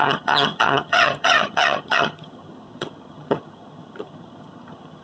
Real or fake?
fake